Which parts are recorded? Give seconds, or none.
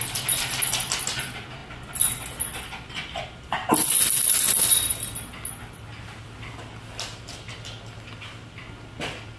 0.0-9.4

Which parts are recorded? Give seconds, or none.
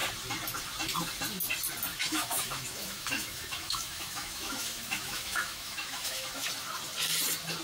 0.0-1.9; 6.5-7.6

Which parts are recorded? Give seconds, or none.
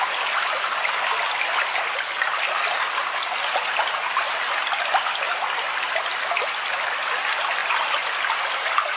0.0-9.0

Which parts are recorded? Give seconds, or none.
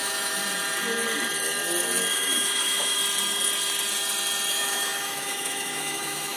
0.4-2.1; 3.0-4.5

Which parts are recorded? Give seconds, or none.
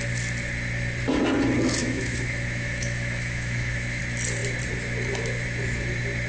0.0-1.8; 4.0-6.3